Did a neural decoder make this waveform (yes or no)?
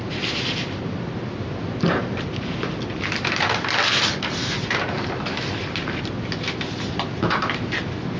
no